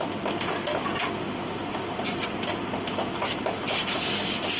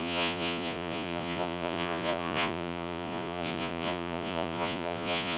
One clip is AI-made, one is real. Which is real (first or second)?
first